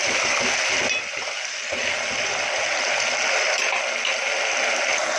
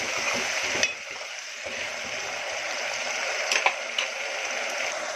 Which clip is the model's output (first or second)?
second